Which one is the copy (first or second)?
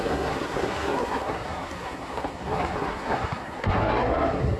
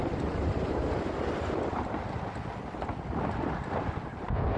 first